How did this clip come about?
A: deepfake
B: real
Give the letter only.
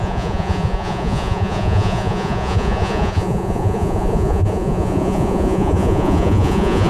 A